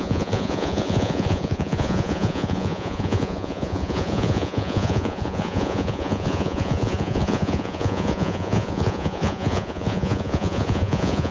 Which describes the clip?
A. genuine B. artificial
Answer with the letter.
B